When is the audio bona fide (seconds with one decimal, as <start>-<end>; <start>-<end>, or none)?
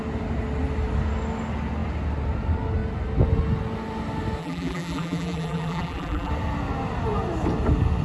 0.0-4.4; 6.3-8.0